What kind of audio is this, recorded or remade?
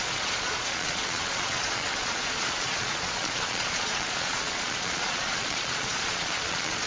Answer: remade